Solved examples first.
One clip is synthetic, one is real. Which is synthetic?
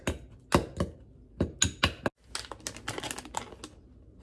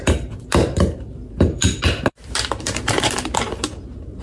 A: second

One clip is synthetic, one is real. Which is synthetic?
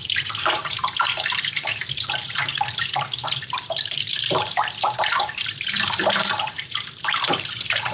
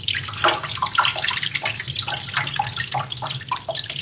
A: first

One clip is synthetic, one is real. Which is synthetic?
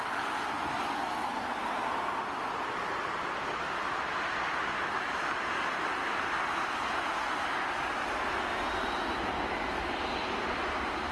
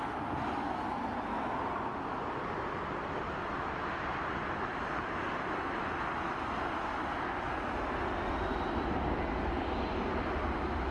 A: first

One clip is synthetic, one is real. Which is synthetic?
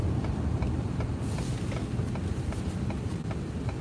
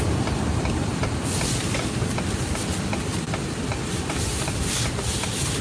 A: second